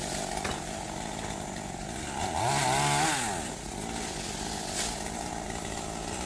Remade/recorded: recorded